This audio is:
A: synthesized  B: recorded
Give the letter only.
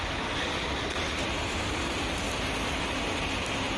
B